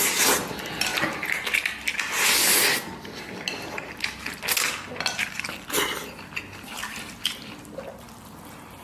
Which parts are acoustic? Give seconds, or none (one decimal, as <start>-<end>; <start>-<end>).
0.0-8.8